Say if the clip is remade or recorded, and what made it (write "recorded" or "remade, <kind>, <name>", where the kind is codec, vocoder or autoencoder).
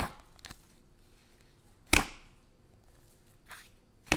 recorded